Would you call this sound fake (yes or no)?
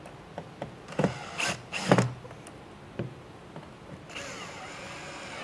no